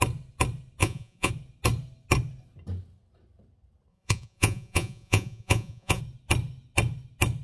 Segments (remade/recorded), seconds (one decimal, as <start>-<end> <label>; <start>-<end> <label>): 0.0-0.8 recorded; 0.8-1.3 remade; 1.3-3.9 recorded; 3.9-6.0 remade; 6.0-7.4 recorded